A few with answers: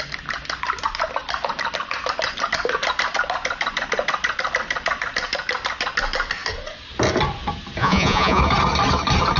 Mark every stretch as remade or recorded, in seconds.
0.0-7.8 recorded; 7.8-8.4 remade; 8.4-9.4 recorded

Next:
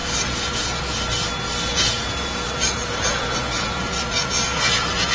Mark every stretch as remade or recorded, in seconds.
0.0-1.0 remade; 1.0-1.7 recorded; 1.7-5.1 remade

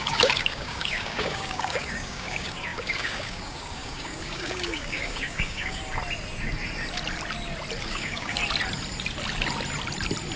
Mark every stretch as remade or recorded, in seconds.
0.0-5.8 remade; 5.8-7.8 recorded; 7.8-8.4 remade; 8.4-10.4 recorded

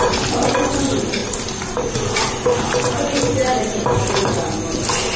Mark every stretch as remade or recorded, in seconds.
0.0-5.2 recorded

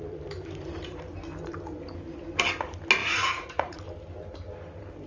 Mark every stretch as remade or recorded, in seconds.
0.0-3.0 recorded; 3.0-3.8 remade; 3.8-5.1 recorded

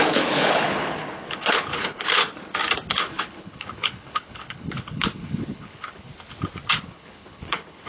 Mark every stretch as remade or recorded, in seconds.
0.0-2.2 remade; 2.2-2.9 recorded; 2.9-6.1 remade; 6.1-6.8 recorded; 6.8-7.9 remade

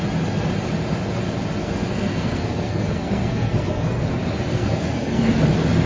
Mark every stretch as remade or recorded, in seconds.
0.0-1.6 recorded; 1.6-4.0 remade; 4.0-4.5 recorded; 4.5-5.2 remade; 5.2-5.9 recorded

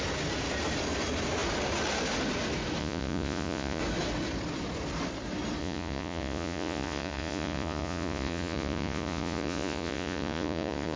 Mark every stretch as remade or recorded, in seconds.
0.0-2.8 recorded; 2.8-3.8 remade; 3.8-5.6 recorded; 5.6-11.0 remade